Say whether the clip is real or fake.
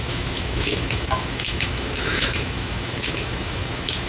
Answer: fake